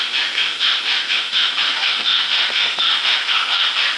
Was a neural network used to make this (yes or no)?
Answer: yes